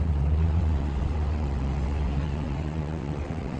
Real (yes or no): no